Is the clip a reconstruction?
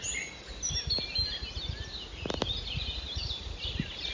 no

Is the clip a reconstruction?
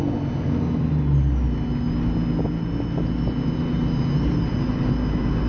no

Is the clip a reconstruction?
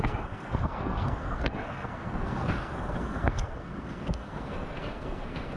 yes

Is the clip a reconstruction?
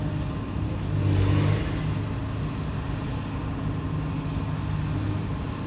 no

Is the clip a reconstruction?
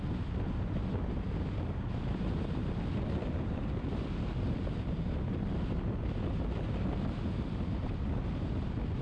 no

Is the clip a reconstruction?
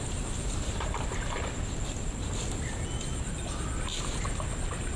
no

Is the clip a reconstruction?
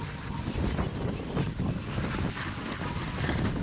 no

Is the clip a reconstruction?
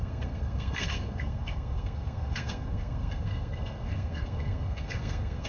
yes